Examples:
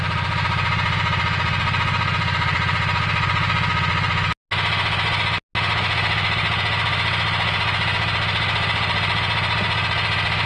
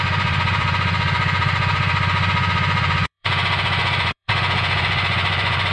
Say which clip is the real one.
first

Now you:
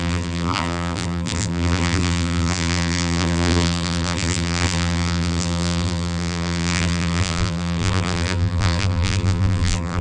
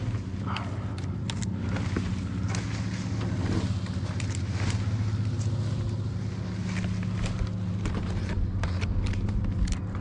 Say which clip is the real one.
second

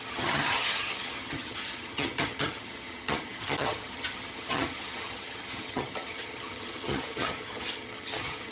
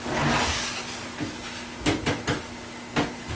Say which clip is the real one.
second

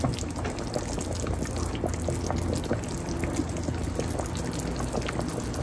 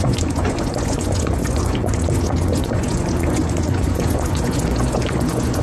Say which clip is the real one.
first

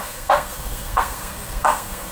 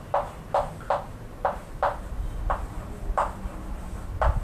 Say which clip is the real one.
second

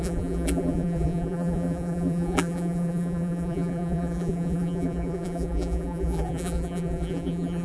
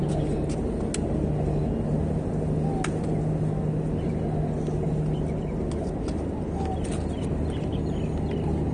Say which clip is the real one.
second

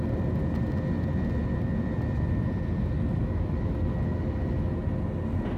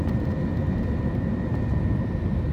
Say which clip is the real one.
first